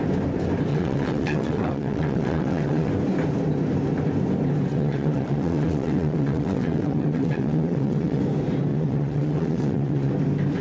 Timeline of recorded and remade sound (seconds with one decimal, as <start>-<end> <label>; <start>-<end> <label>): 0.0-0.7 recorded; 0.7-2.9 remade; 2.9-4.7 recorded; 4.7-8.2 remade; 8.2-8.7 recorded; 8.7-10.1 remade; 10.1-10.6 recorded